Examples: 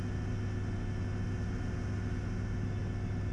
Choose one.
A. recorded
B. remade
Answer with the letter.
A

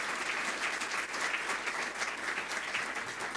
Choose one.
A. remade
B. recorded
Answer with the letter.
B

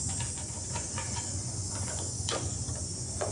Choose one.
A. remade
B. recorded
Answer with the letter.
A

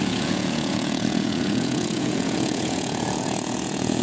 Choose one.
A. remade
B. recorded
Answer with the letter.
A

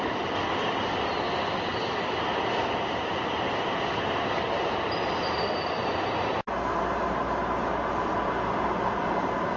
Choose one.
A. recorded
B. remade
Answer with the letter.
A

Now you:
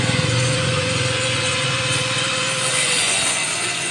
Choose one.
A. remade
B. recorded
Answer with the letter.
A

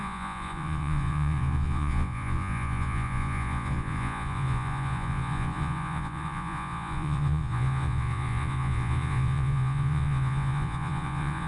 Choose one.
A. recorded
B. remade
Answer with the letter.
B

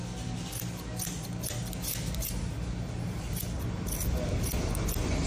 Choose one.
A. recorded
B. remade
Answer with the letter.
A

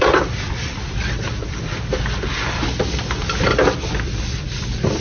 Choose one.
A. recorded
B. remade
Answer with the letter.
A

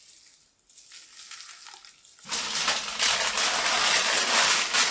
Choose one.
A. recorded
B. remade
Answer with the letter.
A